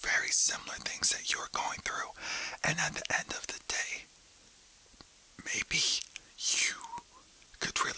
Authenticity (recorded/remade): recorded